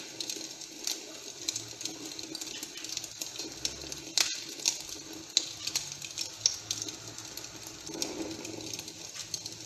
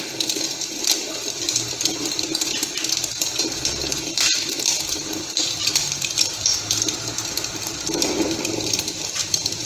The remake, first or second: second